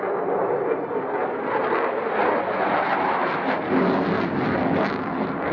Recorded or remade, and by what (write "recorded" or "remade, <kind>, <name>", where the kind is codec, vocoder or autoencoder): recorded